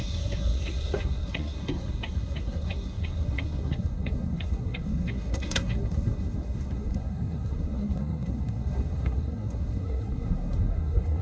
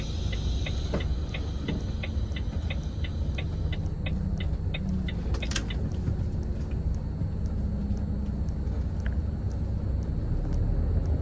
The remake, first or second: first